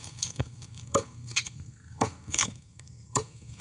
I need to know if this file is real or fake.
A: fake